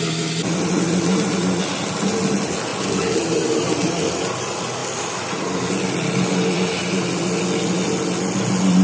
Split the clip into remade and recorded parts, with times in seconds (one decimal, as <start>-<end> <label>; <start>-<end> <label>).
0.0-8.8 recorded